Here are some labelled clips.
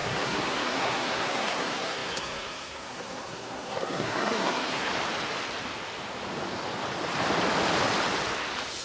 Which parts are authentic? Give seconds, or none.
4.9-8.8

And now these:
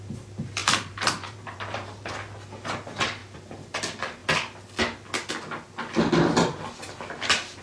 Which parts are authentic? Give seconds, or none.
0.0-0.6; 2.1-3.2; 3.7-7.6

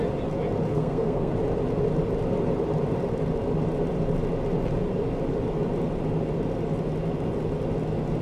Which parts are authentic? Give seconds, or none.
0.0-0.7; 1.3-8.2

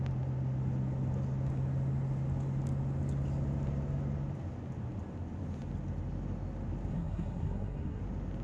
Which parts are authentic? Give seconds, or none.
0.0-6.9; 8.0-8.4